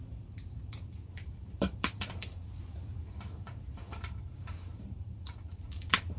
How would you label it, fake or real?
fake